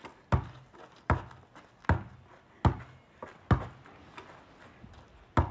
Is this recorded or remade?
recorded